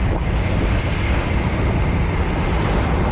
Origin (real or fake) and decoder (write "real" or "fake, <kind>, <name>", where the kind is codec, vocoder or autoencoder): real